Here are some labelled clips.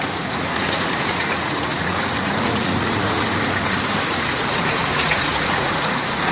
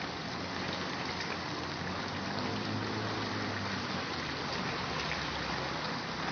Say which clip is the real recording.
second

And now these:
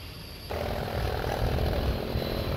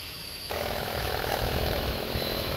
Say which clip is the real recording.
first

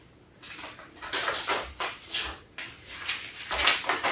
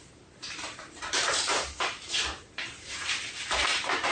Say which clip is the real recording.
first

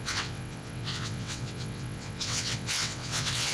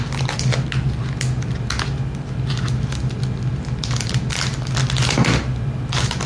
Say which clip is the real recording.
second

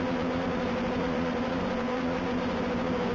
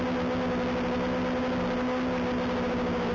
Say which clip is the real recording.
second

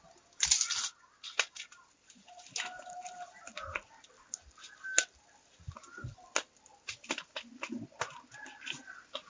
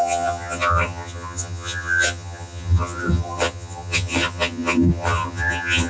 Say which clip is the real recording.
first